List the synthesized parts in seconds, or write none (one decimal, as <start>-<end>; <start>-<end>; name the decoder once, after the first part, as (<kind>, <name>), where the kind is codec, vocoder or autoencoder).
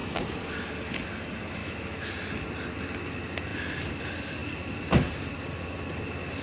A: 1.6-2.1 (autoencoder, DAC-VAE)